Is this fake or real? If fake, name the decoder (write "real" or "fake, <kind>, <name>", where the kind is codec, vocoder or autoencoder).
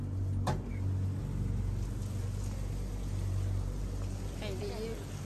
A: real